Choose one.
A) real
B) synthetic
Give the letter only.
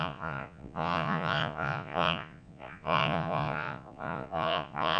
B